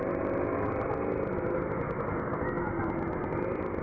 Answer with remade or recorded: recorded